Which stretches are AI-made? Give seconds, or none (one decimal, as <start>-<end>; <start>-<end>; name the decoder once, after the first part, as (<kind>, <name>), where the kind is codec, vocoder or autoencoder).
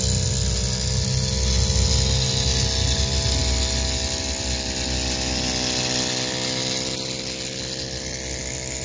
none